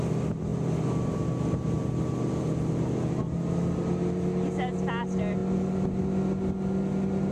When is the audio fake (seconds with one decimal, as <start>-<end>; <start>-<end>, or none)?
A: none